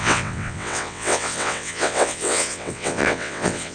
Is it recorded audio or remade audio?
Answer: remade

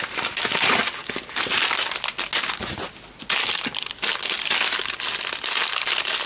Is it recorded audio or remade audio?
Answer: recorded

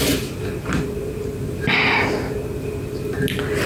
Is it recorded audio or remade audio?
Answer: recorded